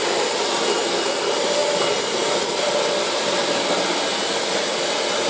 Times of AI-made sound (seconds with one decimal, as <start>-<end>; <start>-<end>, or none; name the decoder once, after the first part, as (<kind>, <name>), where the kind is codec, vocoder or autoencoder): none